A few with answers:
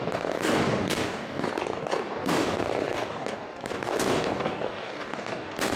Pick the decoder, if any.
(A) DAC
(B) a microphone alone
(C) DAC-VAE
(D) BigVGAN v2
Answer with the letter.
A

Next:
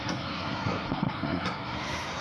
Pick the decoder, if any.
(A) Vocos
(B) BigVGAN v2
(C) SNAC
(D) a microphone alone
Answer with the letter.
C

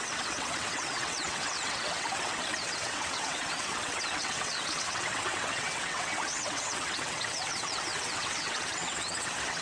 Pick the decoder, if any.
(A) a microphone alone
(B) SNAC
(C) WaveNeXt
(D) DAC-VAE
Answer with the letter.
C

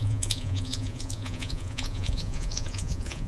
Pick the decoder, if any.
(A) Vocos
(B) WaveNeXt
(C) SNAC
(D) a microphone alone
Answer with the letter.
A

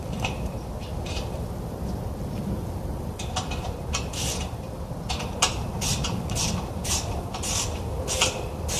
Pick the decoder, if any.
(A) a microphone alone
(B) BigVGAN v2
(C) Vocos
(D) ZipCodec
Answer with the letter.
B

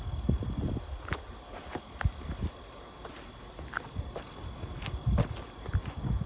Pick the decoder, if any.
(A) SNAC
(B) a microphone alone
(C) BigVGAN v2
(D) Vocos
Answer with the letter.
B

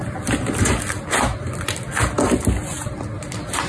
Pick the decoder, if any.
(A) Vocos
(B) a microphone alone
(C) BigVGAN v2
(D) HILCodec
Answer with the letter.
B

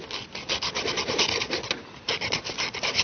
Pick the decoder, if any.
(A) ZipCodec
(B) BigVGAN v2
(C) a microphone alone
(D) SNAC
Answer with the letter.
C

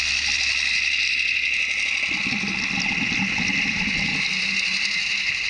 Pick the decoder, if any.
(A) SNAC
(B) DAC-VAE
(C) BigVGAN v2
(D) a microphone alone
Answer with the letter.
D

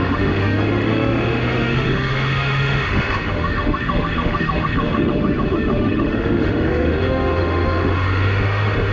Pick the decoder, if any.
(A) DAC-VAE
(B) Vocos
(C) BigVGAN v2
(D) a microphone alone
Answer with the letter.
A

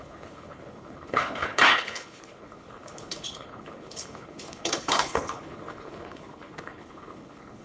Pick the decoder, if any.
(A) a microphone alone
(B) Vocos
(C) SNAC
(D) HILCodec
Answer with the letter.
D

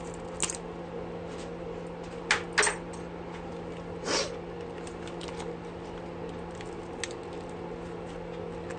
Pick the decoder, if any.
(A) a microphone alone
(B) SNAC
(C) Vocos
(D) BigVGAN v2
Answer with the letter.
A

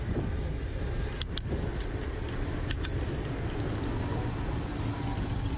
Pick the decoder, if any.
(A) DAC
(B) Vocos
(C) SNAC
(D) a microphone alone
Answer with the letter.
D